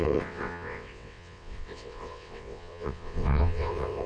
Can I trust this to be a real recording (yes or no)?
no